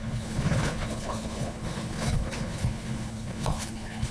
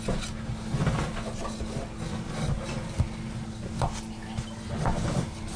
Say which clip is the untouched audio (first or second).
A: second